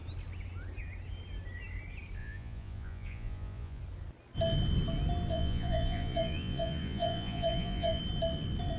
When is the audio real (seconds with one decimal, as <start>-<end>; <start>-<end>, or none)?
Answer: 0.0-2.2; 3.8-5.3; 8.0-8.8